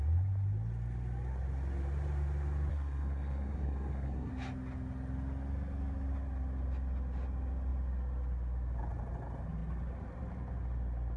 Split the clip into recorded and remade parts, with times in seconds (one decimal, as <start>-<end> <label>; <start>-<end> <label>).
0.0-2.7 recorded; 2.7-4.3 remade; 4.3-11.2 recorded